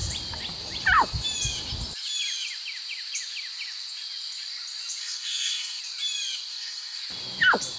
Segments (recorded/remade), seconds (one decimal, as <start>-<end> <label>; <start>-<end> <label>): 0.0-5.0 recorded; 5.0-5.8 remade; 5.8-6.5 recorded; 6.5-7.0 remade; 7.0-7.8 recorded